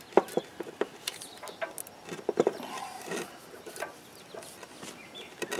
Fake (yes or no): no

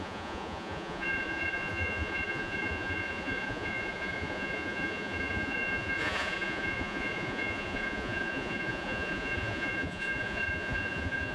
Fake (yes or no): yes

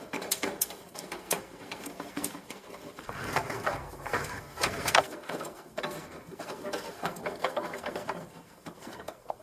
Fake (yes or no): yes